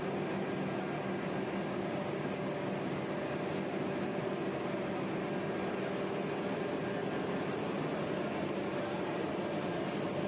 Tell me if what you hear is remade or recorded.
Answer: recorded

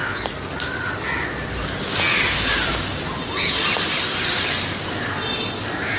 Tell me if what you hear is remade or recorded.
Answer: recorded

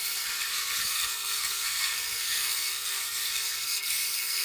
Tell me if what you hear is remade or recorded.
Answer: remade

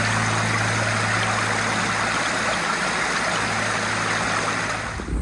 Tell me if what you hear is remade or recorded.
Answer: recorded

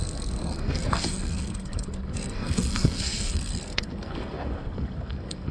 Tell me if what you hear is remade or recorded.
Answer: remade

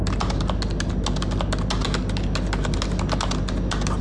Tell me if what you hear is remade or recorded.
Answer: recorded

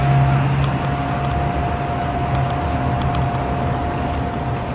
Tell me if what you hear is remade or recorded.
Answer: recorded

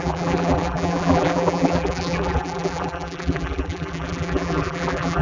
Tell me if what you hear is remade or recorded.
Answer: remade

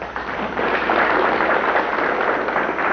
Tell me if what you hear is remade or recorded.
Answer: remade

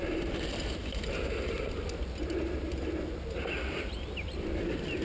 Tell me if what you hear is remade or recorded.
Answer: recorded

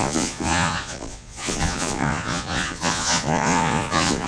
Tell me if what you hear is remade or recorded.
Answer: remade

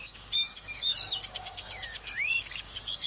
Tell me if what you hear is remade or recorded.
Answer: remade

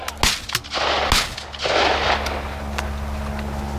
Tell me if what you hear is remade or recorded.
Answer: recorded